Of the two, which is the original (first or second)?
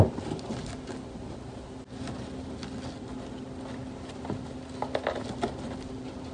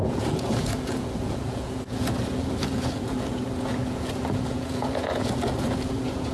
first